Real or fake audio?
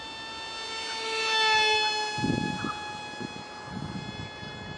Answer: real